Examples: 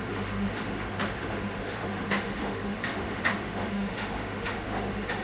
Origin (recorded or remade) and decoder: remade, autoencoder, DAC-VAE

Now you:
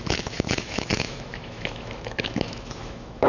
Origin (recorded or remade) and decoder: remade, autoencoder, DAC-VAE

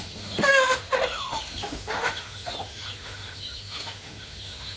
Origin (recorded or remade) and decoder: remade, autoencoder, DAC-VAE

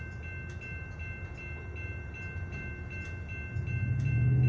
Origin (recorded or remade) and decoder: recorded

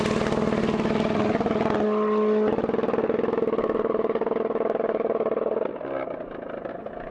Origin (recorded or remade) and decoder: recorded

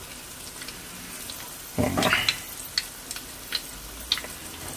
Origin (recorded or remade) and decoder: recorded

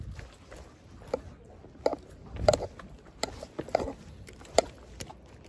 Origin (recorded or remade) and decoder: recorded